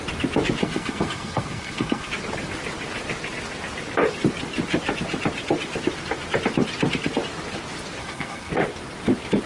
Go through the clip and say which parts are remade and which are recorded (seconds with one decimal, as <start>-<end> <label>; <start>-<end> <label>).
0.0-0.6 recorded; 0.6-2.1 remade; 2.1-8.0 recorded; 8.0-8.5 remade; 8.5-9.5 recorded